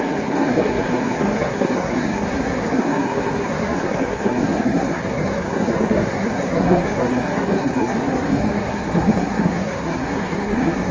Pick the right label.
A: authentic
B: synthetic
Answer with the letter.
B